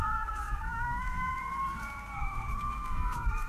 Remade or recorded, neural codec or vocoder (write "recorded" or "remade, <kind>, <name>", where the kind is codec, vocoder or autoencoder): remade, codec, SNAC